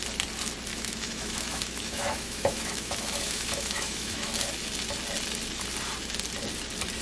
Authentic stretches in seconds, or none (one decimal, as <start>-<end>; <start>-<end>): 0.0-0.7; 4.3-7.0